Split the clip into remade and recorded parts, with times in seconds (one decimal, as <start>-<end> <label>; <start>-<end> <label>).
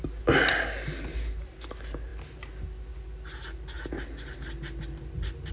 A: 0.0-5.5 recorded